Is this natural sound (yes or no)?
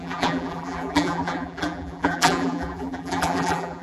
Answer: no